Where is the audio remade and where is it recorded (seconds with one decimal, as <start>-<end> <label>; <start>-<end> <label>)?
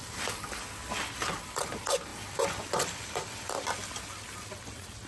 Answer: 0.0-5.1 recorded